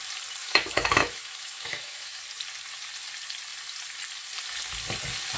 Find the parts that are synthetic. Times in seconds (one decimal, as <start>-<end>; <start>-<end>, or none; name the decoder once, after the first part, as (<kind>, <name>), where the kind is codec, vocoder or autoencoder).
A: 0.4-2.2 (autoencoder, DAC-VAE)